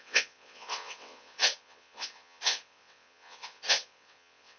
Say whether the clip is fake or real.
fake